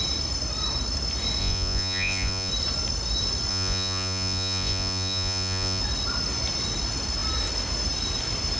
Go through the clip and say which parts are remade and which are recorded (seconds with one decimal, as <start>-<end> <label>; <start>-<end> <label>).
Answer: 0.0-1.4 recorded; 1.4-2.5 remade; 2.5-3.5 recorded; 3.5-5.8 remade; 5.8-8.6 recorded